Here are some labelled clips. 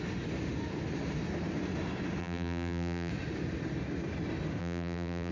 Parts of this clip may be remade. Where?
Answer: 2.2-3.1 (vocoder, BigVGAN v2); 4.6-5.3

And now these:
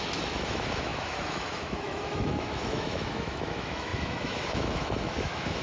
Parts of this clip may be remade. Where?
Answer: 0.0-5.6 (autoencoder, DAC-VAE)